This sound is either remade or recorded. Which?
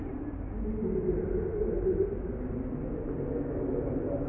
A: recorded